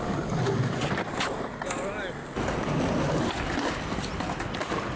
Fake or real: real